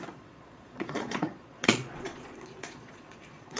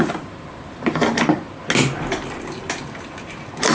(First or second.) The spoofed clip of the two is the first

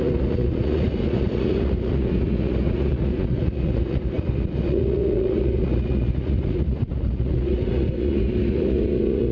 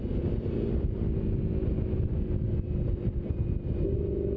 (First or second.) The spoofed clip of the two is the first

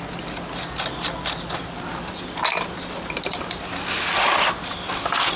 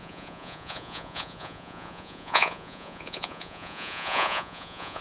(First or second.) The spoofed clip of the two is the second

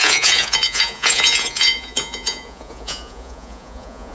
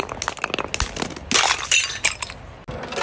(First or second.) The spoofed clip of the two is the first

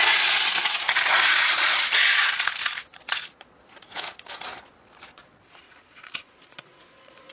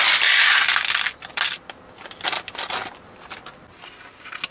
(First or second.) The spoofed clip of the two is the first